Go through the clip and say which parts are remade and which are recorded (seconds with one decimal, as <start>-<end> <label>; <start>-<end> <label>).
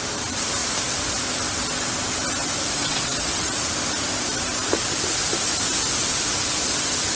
0.0-2.8 recorded; 2.8-3.7 remade; 3.7-7.1 recorded